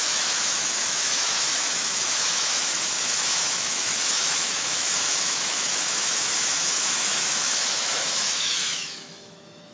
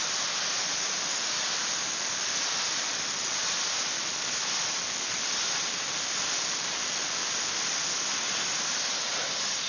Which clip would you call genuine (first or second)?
second